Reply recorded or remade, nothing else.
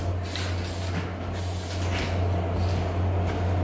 recorded